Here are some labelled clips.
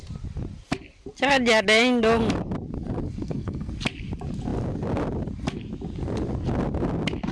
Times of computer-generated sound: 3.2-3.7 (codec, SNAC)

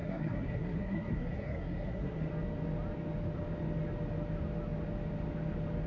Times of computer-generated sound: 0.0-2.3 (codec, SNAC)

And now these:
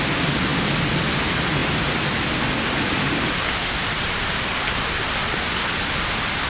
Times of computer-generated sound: none

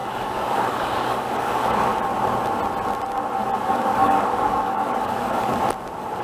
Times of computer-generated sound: 0.0-1.9 (codec, DAC); 3.7-5.5